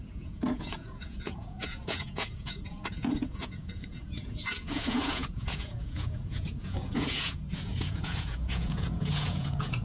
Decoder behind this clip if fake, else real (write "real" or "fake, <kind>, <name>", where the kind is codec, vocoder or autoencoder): fake, vocoder, Vocos